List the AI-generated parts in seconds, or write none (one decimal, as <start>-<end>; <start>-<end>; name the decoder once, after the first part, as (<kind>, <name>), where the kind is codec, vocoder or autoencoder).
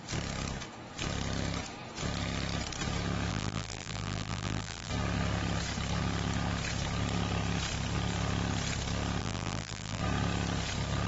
3.3-4.9 (vocoder, BigVGAN v2); 9.2-10.0